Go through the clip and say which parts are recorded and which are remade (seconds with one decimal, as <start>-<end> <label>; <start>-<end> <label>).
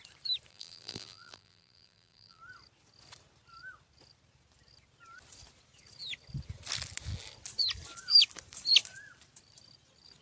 0.0-0.5 recorded; 0.5-2.4 remade; 2.4-10.2 recorded